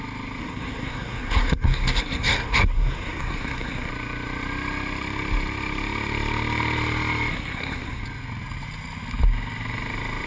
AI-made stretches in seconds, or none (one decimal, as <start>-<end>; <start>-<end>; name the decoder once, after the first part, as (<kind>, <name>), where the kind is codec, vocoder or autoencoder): 0.4-3.9 (codec, SNAC); 7.3-8.0